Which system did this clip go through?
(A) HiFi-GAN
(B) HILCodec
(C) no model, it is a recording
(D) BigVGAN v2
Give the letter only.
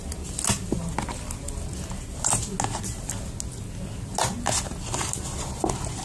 C